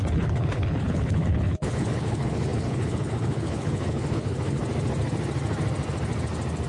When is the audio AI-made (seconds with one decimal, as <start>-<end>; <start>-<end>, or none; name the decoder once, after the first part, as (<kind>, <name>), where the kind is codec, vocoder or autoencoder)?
0.0-4.6 (codec, HILCodec)